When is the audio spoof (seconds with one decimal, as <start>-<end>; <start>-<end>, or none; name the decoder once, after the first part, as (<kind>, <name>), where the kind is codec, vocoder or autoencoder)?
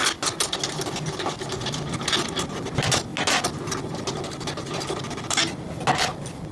none